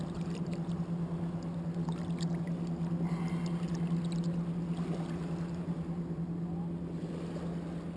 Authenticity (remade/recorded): recorded